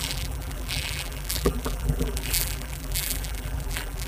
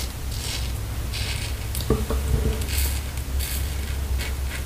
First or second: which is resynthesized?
first